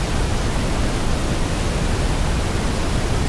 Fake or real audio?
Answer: real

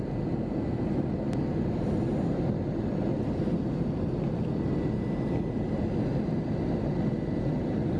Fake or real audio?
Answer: real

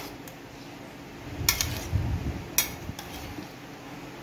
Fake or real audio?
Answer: real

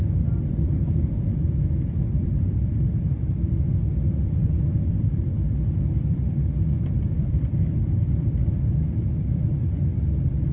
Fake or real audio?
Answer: fake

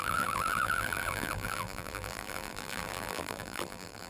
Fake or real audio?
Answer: fake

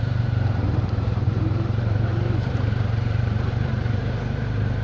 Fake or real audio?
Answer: fake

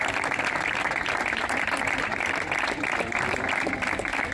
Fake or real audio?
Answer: fake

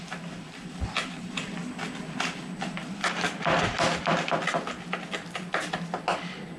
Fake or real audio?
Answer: real